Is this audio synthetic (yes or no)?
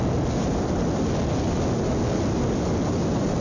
no